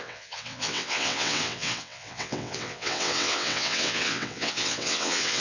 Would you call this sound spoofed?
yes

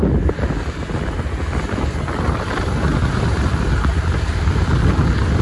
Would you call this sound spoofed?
no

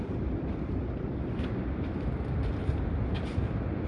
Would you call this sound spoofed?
no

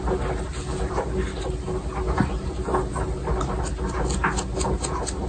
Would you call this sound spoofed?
no